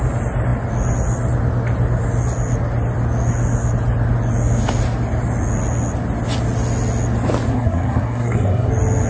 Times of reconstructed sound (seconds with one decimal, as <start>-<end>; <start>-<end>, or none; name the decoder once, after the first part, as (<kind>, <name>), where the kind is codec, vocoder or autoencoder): 7.5-8.7 (codec, SNAC)